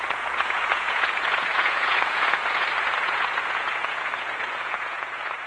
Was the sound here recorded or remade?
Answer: remade